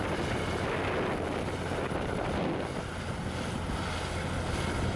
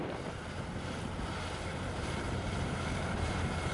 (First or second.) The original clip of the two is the first